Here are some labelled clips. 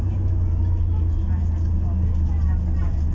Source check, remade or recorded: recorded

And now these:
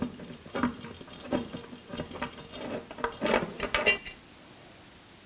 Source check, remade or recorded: recorded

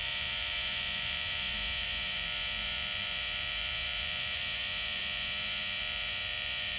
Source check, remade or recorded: remade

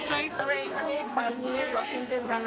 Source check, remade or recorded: remade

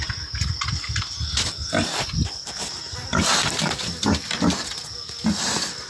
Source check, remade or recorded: recorded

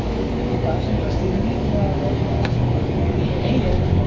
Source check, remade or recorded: remade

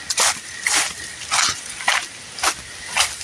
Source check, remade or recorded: recorded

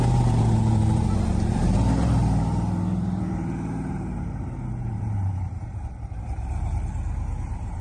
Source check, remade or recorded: remade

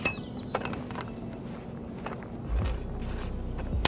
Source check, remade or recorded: recorded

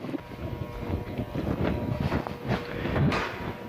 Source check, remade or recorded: recorded